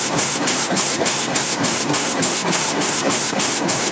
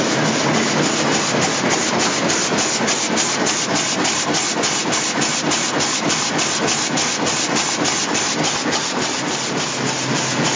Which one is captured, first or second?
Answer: second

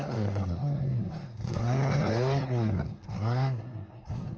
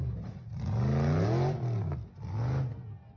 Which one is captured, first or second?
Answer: second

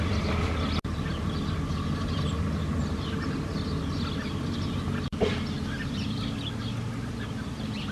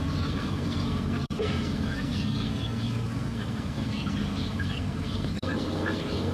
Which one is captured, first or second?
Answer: first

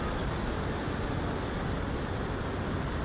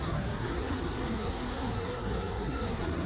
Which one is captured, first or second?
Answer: first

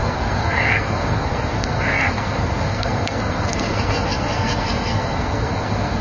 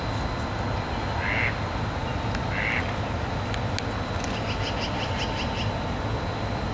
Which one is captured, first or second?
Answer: second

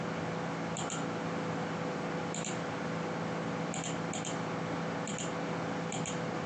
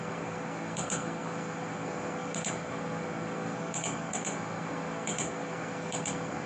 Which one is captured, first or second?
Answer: first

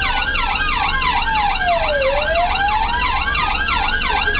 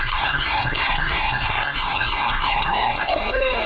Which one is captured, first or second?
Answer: first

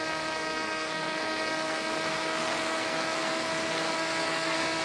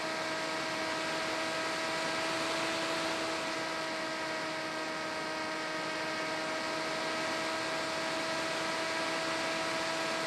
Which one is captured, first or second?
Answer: second